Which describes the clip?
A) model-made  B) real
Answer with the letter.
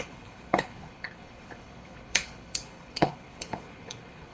A